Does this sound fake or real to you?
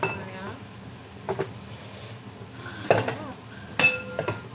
real